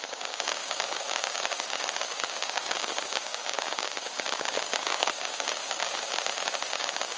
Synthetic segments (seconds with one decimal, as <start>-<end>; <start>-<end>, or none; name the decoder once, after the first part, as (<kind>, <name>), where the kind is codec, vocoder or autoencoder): 0.0-5.8 (codec, DAC); 6.7-7.2